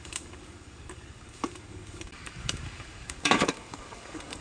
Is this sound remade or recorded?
remade